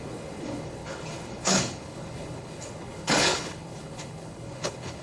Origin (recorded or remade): remade